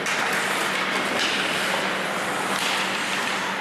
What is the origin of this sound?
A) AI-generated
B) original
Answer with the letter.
B